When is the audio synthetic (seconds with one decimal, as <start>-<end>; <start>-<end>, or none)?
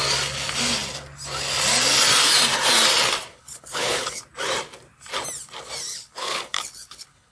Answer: 3.3-4.2; 5.9-7.3